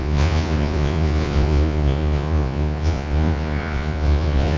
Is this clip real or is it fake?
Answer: fake